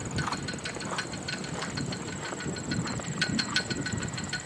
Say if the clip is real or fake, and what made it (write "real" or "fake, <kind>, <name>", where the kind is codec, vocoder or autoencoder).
real